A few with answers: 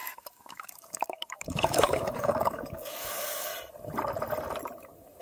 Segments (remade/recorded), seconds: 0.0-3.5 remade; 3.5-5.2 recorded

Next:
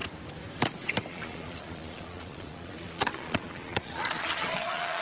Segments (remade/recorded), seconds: 0.0-1.1 recorded; 1.1-5.0 remade